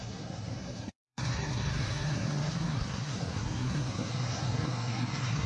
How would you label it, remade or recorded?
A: remade